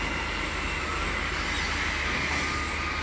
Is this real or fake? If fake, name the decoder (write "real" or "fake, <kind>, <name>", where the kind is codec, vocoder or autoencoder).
real